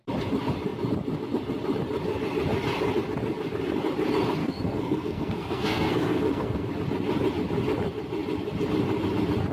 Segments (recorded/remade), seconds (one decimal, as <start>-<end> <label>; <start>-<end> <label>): 0.0-4.4 recorded; 4.4-6.7 remade; 6.7-9.5 recorded